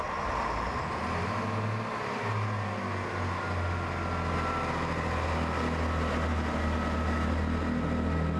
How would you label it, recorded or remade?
recorded